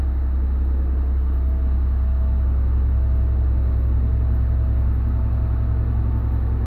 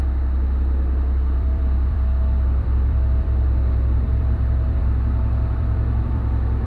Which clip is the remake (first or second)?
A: second